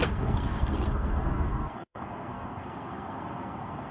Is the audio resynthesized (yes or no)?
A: yes